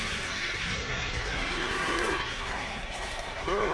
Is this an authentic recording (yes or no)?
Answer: no